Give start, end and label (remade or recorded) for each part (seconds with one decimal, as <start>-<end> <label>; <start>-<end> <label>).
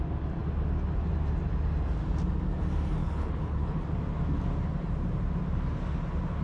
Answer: 0.0-3.0 recorded; 3.0-3.8 remade; 3.8-6.4 recorded